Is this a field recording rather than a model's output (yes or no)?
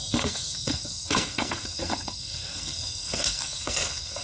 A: no